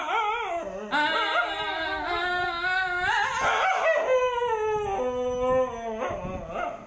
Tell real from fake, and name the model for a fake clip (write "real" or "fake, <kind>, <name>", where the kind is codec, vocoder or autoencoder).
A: real